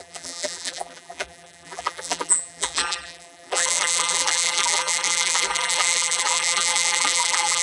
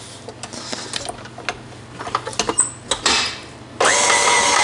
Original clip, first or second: second